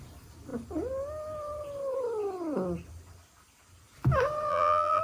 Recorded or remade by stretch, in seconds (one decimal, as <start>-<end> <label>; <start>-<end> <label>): 0.0-4.5 recorded; 4.5-5.0 remade